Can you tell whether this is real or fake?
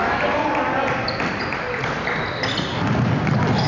real